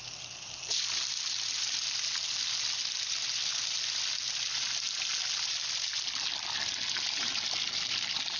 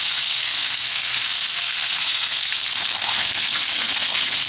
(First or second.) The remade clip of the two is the second